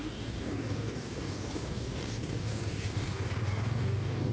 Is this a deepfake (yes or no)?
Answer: yes